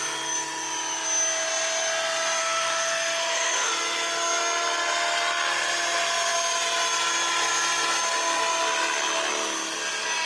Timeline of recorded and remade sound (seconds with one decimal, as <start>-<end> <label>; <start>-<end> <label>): 0.0-2.4 recorded; 2.4-3.7 remade; 3.7-10.3 recorded